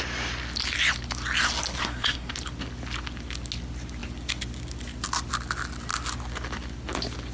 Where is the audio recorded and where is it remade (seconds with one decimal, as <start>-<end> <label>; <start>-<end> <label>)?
0.0-1.8 recorded; 1.8-2.3 remade; 2.3-7.3 recorded

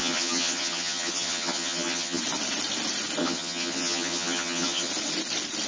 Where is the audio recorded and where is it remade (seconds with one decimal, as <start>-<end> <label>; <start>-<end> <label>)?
0.0-2.2 remade; 2.2-3.2 recorded; 3.2-4.9 remade; 4.9-5.7 recorded

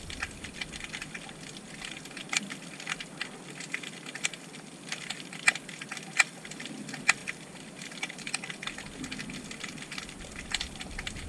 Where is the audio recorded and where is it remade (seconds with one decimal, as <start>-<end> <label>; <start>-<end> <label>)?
0.0-11.3 recorded

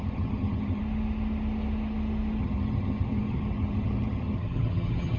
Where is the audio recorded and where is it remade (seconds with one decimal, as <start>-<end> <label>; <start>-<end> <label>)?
0.0-0.8 remade; 0.8-2.4 recorded; 2.4-5.2 remade